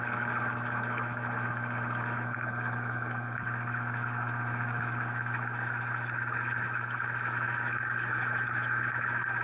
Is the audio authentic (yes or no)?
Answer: no